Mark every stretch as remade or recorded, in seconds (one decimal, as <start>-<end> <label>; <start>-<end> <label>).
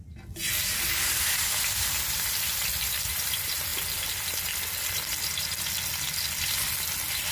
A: 0.0-7.3 recorded